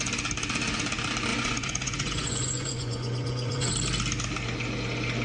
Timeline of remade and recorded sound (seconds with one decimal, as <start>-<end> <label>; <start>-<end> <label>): 0.0-1.3 recorded; 1.3-3.7 remade; 3.7-5.2 recorded